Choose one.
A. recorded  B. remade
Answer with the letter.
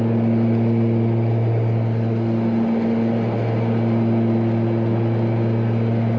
A